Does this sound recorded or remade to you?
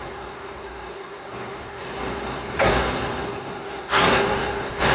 remade